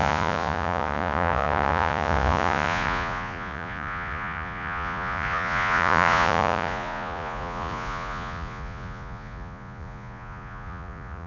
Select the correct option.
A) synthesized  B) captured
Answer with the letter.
A